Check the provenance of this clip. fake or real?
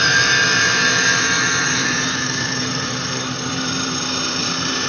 fake